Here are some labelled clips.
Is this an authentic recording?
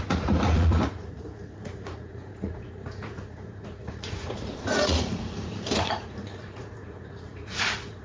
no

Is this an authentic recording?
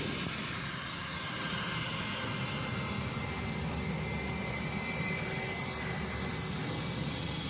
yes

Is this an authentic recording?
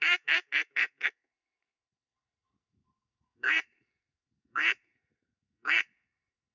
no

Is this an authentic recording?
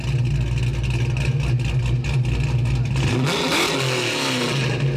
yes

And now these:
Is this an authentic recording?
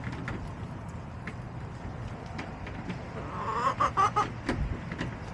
yes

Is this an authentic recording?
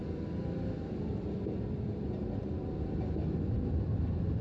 no